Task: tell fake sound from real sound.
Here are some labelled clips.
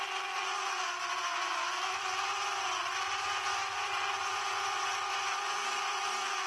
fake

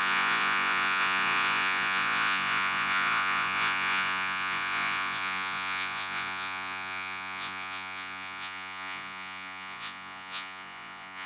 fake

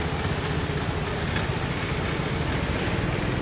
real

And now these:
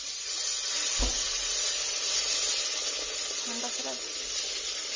real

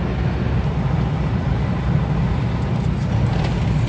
real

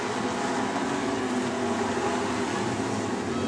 real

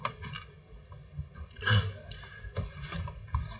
real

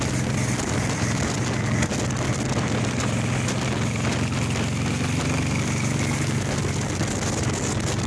real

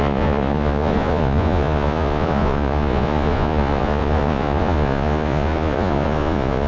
fake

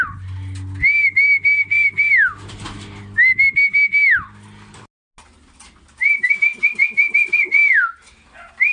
real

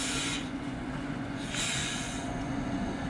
fake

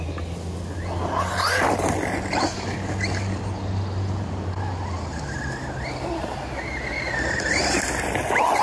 real